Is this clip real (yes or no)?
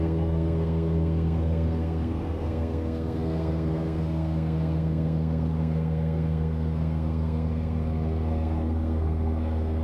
no